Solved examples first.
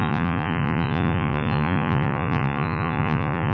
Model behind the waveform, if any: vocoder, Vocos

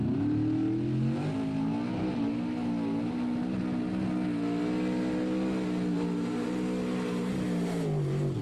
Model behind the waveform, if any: none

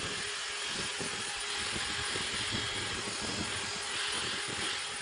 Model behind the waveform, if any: none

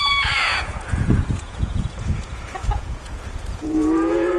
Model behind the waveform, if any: vocoder, Vocos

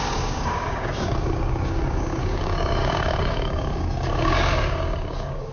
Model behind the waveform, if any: codec, DAC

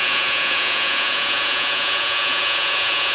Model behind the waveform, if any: vocoder, Vocos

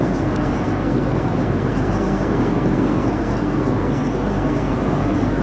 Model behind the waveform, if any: codec, SNAC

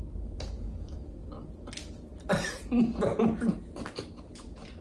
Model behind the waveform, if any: none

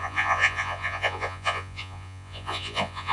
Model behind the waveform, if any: vocoder, Vocos